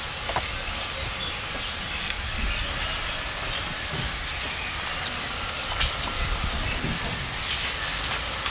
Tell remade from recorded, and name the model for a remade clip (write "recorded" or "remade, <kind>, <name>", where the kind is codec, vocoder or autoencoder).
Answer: recorded